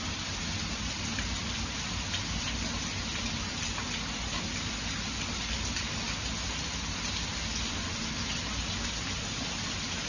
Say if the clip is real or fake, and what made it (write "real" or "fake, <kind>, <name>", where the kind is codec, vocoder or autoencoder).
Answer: real